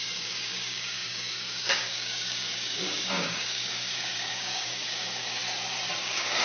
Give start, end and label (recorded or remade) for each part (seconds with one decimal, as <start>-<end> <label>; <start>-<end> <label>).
0.0-5.4 remade; 5.4-6.0 recorded; 6.0-6.4 remade